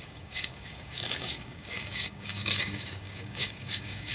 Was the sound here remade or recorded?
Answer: remade